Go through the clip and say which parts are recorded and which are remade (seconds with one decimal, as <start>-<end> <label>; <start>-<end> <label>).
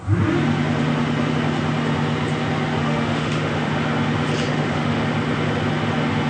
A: 0.0-2.8 recorded; 2.8-3.7 remade; 3.7-4.5 recorded; 4.5-5.0 remade; 5.0-6.3 recorded